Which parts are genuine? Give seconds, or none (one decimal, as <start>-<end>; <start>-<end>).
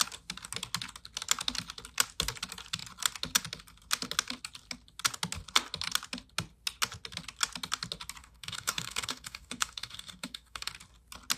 0.0-8.2; 10.7-11.4